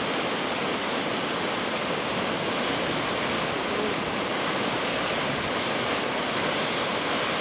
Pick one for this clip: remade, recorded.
recorded